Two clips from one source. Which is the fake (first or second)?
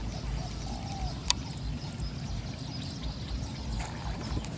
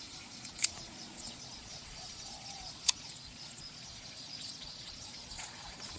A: second